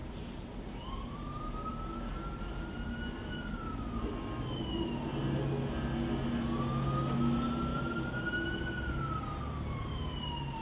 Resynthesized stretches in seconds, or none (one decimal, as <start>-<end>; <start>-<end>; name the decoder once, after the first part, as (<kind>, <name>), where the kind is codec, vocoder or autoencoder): 7.7-8.3 (vocoder, BigVGAN v2)